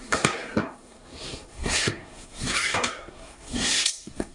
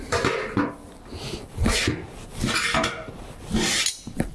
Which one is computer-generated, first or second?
first